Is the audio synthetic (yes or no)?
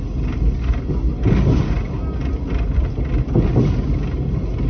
no